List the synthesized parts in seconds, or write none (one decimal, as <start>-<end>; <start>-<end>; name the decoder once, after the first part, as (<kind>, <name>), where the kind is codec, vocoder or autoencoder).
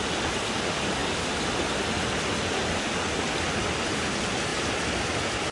1.0-3.8 (vocoder, BigVGAN v2); 4.5-5.5